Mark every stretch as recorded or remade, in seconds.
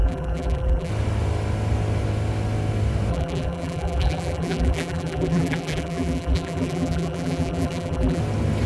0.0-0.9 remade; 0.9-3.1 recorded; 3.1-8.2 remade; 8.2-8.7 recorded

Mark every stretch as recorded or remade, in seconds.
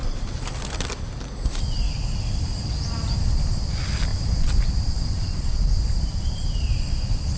0.0-0.6 remade; 0.6-4.1 recorded; 4.1-6.5 remade; 6.5-7.4 recorded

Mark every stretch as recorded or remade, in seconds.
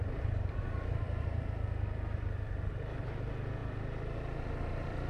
0.0-3.1 remade; 3.1-3.6 recorded; 3.6-5.1 remade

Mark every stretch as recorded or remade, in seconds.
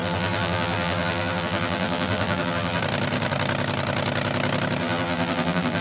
0.0-2.8 remade; 2.8-4.8 recorded; 4.8-5.8 remade